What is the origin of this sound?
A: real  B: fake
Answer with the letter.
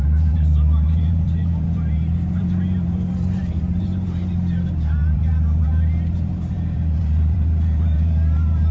B